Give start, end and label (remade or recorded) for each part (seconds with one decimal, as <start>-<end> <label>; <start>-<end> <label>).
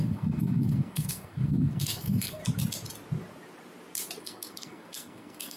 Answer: 0.0-2.4 remade; 2.4-4.2 recorded; 4.2-5.6 remade